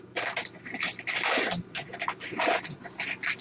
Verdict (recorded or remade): recorded